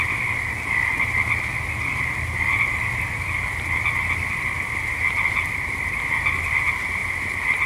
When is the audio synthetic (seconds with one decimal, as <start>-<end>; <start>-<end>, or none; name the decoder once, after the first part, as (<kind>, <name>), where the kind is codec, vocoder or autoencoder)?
1.9-6.0 (vocoder, BigVGAN v2)